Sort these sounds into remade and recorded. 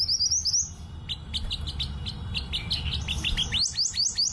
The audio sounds recorded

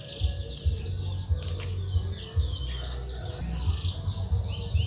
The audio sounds recorded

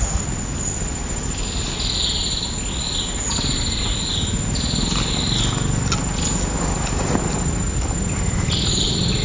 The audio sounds recorded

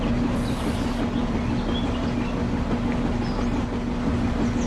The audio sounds recorded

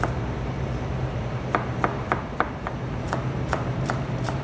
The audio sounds remade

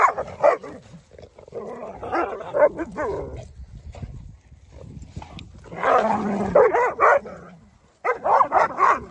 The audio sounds recorded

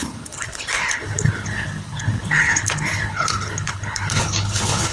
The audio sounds remade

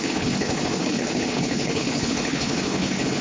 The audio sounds remade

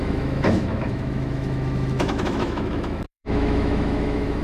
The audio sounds remade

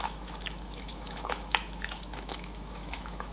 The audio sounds remade